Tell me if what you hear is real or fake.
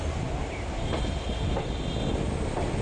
real